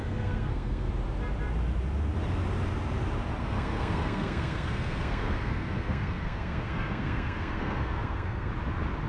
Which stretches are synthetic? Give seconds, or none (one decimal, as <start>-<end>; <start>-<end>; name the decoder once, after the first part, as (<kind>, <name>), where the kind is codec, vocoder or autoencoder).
0.0-0.9 (codec, SNAC); 3.4-8.5